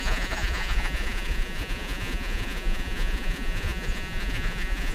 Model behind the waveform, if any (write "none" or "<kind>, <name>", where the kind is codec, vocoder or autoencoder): vocoder, Vocos